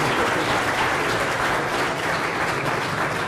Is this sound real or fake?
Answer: real